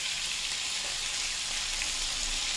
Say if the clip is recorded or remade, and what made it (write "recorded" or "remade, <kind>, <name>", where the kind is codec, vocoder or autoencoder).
recorded